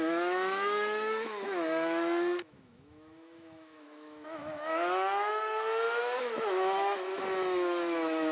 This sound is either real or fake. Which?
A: fake